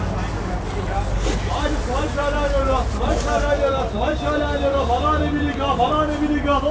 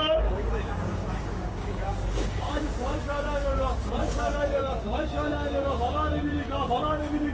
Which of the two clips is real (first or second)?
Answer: first